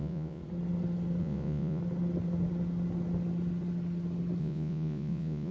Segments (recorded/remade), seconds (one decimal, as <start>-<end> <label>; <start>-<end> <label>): 0.0-0.4 remade; 0.4-1.2 recorded; 1.2-1.8 remade; 1.8-4.4 recorded; 4.4-5.5 remade